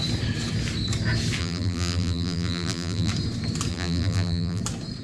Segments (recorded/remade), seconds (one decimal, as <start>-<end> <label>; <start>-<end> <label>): 0.0-1.4 recorded; 1.4-3.1 remade; 3.1-3.7 recorded; 3.7-4.6 remade; 4.6-5.0 recorded

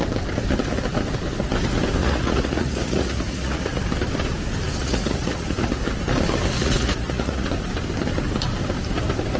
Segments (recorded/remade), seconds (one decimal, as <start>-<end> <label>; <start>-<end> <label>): 0.0-2.0 recorded; 2.0-3.8 remade; 3.8-4.8 recorded; 4.8-5.7 remade; 5.7-6.6 recorded; 6.6-7.5 remade; 7.5-9.4 recorded

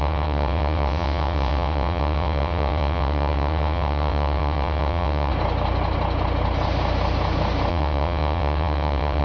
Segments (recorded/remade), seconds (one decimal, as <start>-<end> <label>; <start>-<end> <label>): 0.0-5.3 remade; 5.3-7.7 recorded; 7.7-9.2 remade

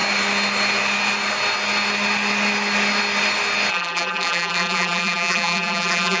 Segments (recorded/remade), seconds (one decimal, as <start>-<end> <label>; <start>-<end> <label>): 0.0-3.7 recorded; 3.7-6.2 remade